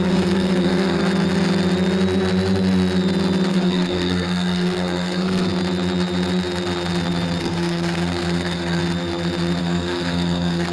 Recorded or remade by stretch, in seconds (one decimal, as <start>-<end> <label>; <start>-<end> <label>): 0.0-1.0 remade; 1.0-3.5 recorded; 3.5-5.5 remade; 5.5-7.4 recorded; 7.4-8.8 remade; 8.8-9.6 recorded; 9.6-10.7 remade